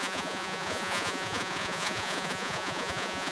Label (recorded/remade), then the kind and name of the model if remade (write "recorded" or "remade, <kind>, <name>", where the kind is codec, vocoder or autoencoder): remade, vocoder, Vocos